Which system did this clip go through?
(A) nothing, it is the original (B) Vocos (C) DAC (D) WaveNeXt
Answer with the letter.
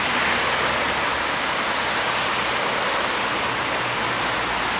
A